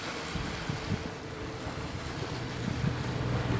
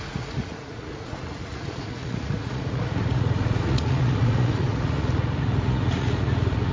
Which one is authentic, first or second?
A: first